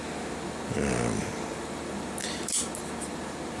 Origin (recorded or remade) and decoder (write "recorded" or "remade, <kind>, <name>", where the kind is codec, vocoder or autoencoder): recorded